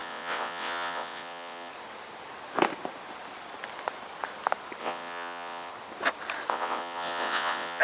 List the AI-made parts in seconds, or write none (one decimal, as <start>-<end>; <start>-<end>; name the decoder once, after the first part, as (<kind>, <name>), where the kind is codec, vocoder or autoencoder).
0.0-1.7 (vocoder, WaveNeXt); 4.8-5.7; 6.5-7.8